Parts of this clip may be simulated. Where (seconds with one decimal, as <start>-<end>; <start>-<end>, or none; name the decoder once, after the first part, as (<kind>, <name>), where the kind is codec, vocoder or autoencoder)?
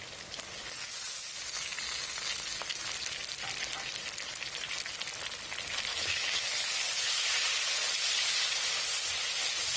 5.9-6.5 (autoencoder, DAC-VAE)